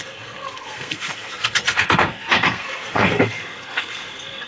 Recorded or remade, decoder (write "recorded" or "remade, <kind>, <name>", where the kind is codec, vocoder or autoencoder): remade, codec, SNAC